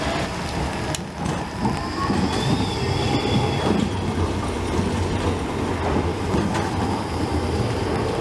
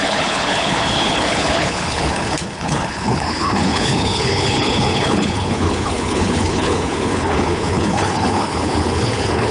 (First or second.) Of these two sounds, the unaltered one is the first